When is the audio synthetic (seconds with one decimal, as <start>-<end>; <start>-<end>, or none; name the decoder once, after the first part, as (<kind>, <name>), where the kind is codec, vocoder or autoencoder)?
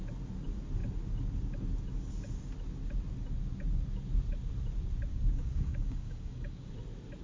5.1-6.7 (codec, DAC)